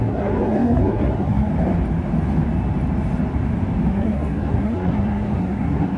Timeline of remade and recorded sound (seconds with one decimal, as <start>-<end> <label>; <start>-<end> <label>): 0.0-1.5 remade; 1.5-3.9 recorded; 3.9-6.0 remade